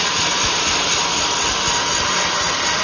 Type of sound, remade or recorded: recorded